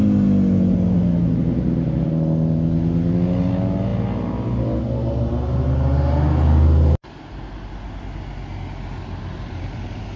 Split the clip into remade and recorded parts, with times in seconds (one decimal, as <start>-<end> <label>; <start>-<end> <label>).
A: 0.0-10.2 recorded